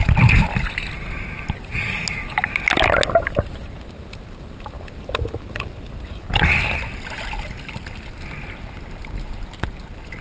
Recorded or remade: recorded